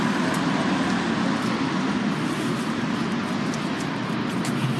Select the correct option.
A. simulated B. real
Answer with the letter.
B